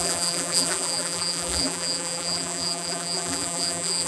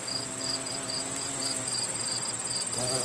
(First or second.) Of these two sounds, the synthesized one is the first